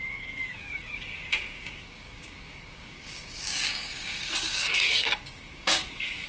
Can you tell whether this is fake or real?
fake